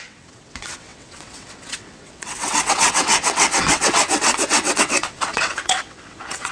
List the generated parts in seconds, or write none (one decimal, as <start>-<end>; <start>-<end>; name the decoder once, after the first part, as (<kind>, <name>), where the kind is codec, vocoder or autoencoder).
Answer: 0.0-6.5 (vocoder, WaveNeXt)